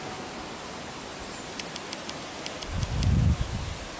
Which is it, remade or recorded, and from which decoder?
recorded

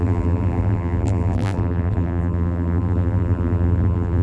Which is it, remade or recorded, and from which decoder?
remade, vocoder, BigVGAN v2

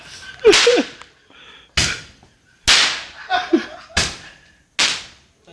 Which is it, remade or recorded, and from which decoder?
recorded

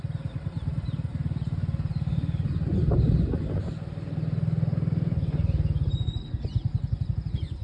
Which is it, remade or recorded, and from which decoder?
recorded